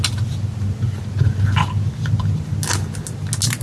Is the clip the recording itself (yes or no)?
yes